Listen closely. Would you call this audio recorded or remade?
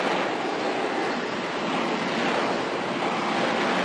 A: recorded